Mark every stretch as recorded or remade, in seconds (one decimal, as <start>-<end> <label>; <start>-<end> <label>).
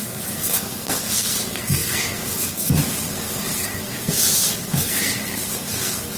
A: 0.0-6.2 remade